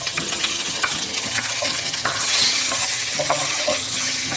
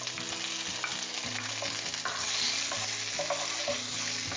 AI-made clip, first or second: first